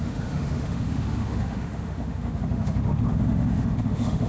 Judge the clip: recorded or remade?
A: remade